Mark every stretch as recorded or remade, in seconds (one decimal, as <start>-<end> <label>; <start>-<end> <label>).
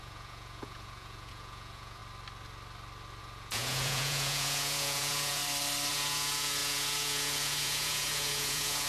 0.0-2.0 remade; 2.0-3.2 recorded; 3.2-5.4 remade; 5.4-5.9 recorded; 5.9-8.9 remade